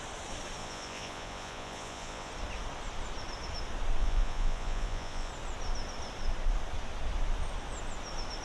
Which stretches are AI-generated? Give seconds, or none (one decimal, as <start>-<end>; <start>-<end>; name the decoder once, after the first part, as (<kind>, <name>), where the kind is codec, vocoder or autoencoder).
0.6-2.3 (vocoder, Vocos); 4.0-5.3